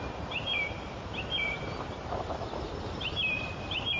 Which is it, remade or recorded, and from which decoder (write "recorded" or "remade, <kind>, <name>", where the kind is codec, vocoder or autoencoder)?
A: remade, vocoder, BigVGAN v2